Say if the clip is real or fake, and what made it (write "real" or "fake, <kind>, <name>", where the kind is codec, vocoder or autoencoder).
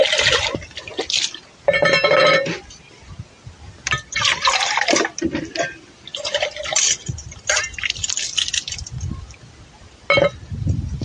real